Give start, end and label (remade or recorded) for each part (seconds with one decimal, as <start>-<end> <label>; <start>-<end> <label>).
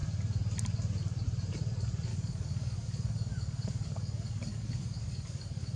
0.0-2.1 recorded; 2.1-5.8 remade